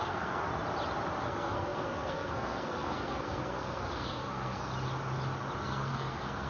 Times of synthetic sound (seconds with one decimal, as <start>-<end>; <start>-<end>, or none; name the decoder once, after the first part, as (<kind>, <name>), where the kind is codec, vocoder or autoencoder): 0.0-0.5 (codec, SNAC); 1.2-4.7; 5.6-6.5